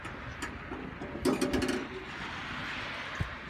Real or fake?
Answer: real